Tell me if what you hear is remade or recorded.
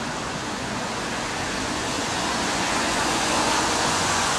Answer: remade